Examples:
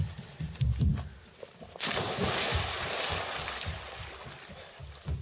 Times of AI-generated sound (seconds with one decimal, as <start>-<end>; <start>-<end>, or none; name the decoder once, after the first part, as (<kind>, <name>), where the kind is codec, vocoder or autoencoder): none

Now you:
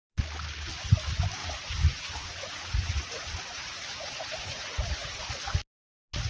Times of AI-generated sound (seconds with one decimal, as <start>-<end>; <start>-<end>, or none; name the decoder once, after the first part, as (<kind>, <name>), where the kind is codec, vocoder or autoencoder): 1.4-5.2 (vocoder, Vocos)

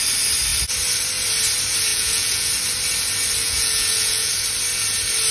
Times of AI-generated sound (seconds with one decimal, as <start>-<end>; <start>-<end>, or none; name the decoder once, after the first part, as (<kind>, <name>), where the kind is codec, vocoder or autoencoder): 1.9-2.5 (vocoder, Vocos); 3.4-4.3

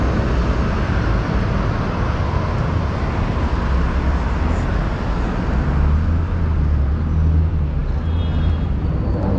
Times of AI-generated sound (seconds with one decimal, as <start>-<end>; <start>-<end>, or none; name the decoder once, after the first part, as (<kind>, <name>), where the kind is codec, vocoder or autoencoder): none

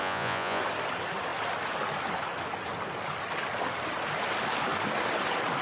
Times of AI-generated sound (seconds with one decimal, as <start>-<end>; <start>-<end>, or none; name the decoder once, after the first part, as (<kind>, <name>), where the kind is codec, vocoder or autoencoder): 0.0-0.6 (vocoder, Vocos)

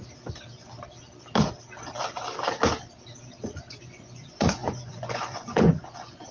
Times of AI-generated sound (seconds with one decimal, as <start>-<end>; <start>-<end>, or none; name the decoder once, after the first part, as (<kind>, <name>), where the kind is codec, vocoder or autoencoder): 3.8-6.3 (vocoder, Vocos)